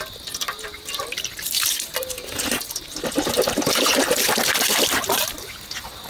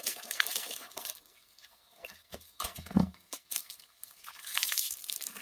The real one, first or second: first